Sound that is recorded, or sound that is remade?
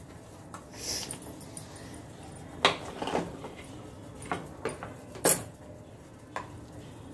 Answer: recorded